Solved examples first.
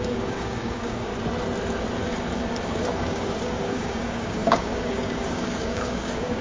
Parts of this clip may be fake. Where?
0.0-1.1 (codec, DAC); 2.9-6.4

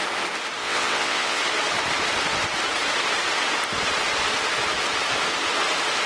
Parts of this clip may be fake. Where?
0.6-1.4 (vocoder, WaveNeXt)

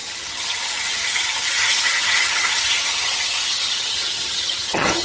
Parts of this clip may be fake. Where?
0.0-5.0 (vocoder, HiFi-GAN)

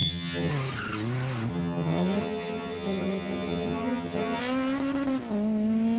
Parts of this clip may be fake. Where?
0.0-0.5 (vocoder, HiFi-GAN); 1.5-4.4

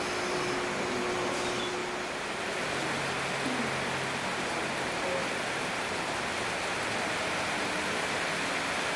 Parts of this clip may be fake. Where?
none

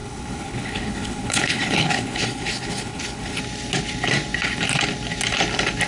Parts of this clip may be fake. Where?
0.0-3.4 (codec, HILCodec)